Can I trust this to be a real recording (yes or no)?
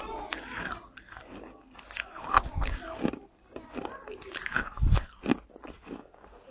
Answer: yes